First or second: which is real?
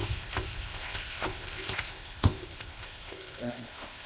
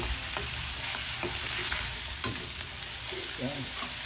second